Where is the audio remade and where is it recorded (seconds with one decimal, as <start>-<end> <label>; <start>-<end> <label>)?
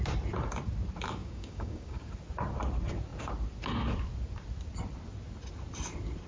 0.0-1.2 recorded; 1.2-2.1 remade; 2.1-6.3 recorded